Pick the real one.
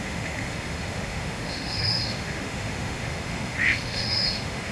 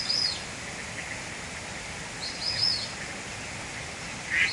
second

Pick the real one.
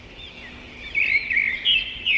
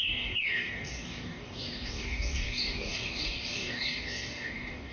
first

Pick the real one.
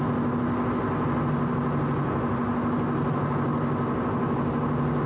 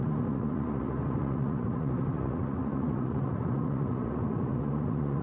first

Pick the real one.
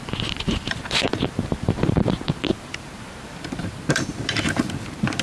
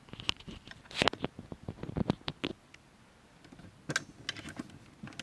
second